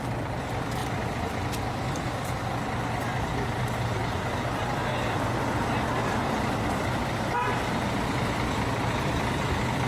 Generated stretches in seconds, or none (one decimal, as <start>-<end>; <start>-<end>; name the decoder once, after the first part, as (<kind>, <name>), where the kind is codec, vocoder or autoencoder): 0.8-1.9 (vocoder, BigVGAN v2); 4.0-5.2; 6.0-9.5